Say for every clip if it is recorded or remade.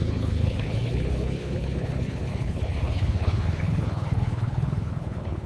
remade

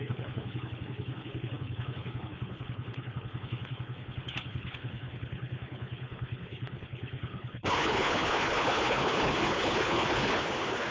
remade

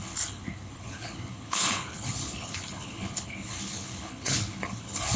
remade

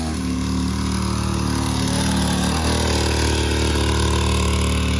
recorded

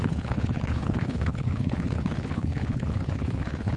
remade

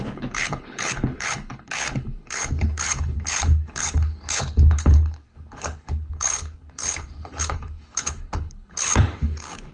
remade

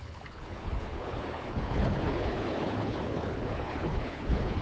remade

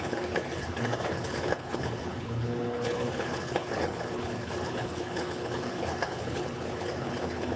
remade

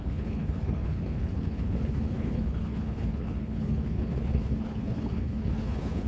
remade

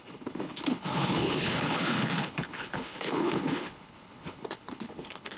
remade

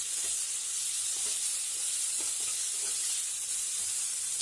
recorded